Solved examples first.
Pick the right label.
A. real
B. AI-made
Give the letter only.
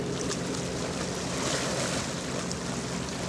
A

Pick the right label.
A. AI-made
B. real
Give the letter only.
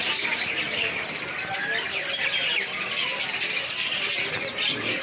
B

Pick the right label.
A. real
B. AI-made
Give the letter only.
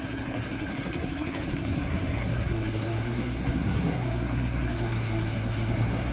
B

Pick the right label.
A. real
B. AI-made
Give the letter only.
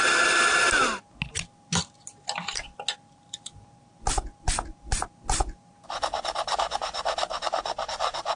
A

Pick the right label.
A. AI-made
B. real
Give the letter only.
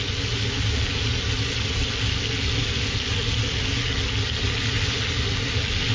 B